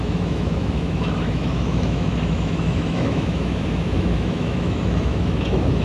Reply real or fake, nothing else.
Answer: fake